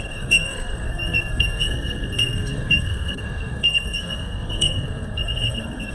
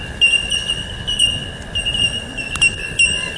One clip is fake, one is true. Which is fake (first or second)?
first